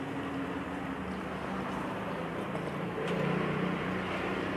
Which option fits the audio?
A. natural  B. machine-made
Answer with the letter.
A